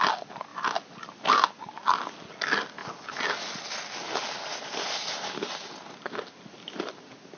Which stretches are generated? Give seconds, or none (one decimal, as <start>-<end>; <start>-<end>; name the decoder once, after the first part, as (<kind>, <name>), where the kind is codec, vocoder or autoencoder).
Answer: none